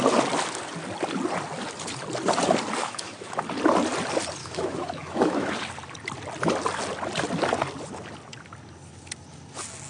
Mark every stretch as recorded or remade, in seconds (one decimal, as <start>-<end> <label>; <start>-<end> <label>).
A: 0.0-2.8 recorded; 2.8-3.4 remade; 3.4-4.4 recorded; 4.4-5.5 remade; 5.5-9.9 recorded